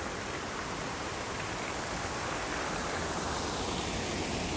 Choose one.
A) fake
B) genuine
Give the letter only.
B